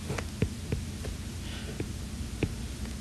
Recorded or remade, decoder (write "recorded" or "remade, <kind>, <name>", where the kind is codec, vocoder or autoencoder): recorded